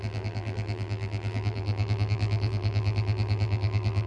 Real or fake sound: fake